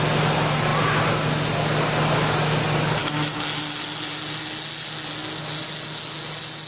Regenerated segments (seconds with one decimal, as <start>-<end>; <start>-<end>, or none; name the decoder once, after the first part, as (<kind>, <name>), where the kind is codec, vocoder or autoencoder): none